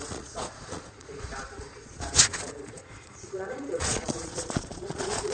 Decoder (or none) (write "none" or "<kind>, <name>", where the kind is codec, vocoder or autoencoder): vocoder, Vocos